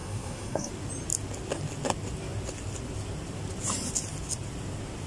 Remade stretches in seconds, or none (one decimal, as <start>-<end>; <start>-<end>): 0.0-0.7